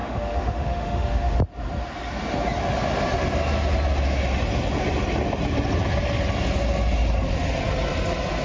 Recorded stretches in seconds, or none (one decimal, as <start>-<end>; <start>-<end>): 1.4-8.4